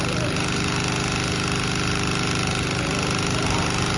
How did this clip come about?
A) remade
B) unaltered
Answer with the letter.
B